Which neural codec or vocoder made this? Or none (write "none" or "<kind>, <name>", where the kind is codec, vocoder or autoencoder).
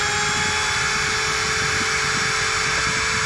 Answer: none